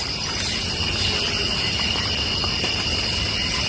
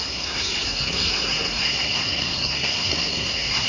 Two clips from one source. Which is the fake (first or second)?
second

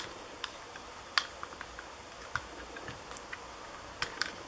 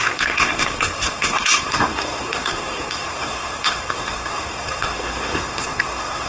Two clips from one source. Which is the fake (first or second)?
second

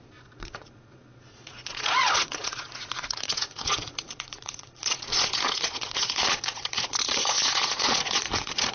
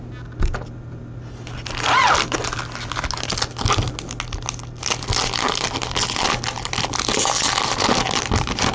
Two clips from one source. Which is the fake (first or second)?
first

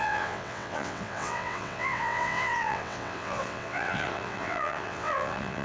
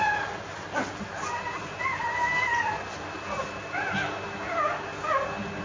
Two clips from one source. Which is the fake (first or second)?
first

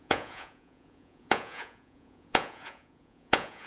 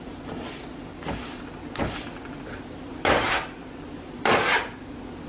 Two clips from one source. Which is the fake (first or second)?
first